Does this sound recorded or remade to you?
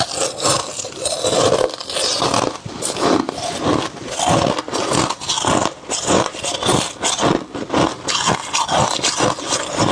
recorded